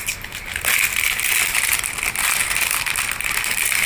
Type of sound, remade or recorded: recorded